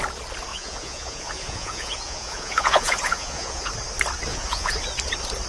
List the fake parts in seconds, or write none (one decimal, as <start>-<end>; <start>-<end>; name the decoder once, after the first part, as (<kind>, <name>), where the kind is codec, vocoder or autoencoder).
0.5-3.7 (vocoder, Vocos); 4.3-4.8